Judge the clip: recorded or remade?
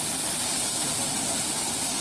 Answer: recorded